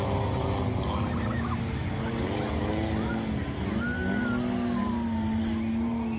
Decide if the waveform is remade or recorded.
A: recorded